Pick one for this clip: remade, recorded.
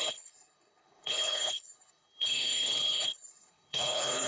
remade